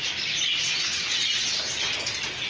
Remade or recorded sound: recorded